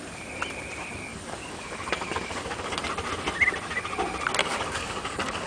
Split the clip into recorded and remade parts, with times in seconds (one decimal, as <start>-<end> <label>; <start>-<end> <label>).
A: 0.0-1.1 recorded; 1.1-2.8 remade; 2.8-4.4 recorded; 4.4-5.5 remade